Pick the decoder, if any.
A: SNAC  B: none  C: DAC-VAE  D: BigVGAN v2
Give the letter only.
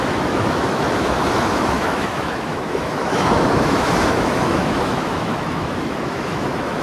C